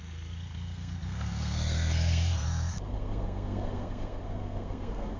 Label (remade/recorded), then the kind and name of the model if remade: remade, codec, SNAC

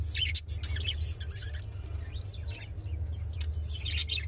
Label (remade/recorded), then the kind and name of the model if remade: recorded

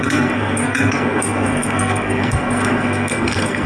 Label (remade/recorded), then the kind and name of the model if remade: remade, codec, SNAC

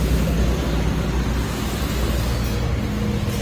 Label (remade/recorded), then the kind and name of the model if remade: recorded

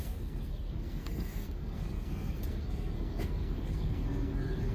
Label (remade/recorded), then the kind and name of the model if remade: remade, codec, SNAC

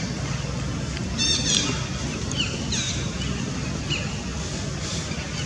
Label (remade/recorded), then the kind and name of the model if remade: recorded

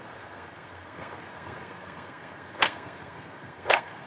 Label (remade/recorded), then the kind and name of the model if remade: remade, codec, SNAC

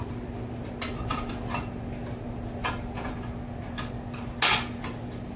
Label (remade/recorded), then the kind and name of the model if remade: recorded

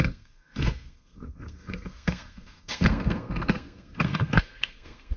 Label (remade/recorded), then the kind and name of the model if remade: remade, codec, SNAC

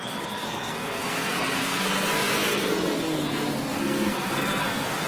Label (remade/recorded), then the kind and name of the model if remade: remade, codec, SNAC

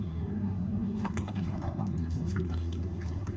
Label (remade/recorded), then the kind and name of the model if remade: remade, codec, SNAC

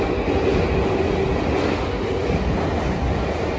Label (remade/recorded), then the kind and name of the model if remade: recorded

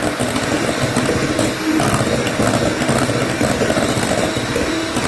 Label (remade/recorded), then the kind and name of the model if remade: recorded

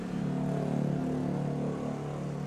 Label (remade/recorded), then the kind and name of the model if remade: recorded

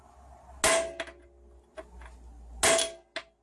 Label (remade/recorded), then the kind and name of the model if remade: recorded